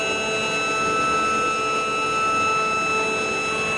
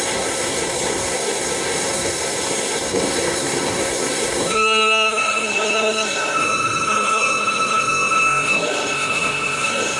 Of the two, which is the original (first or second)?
first